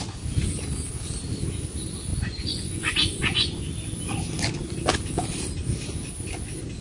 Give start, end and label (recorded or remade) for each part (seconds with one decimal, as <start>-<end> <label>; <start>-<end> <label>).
0.0-2.1 recorded; 2.1-3.6 remade; 3.6-6.8 recorded